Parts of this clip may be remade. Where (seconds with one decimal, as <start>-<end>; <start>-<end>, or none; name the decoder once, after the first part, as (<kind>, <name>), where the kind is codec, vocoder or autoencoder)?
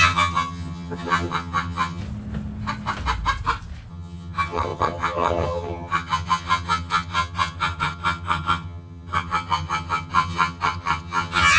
0.0-2.0 (vocoder, HiFi-GAN); 3.9-11.6